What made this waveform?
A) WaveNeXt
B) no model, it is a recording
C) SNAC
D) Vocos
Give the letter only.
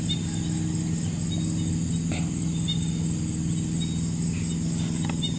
B